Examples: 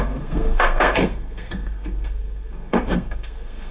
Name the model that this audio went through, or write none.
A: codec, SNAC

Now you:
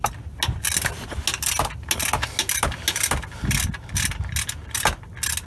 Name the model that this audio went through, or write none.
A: none